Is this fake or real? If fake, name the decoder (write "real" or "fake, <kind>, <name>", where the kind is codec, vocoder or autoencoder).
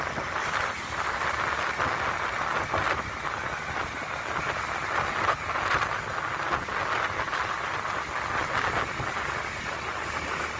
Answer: real